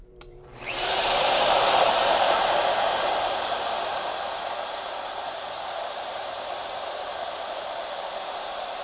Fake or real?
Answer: fake